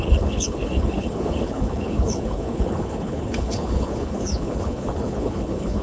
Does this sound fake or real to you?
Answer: fake